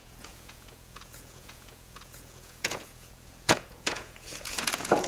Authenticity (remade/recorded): remade